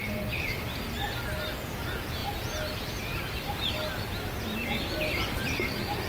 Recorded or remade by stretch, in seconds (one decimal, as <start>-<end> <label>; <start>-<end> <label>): 0.0-1.7 recorded; 1.7-6.1 remade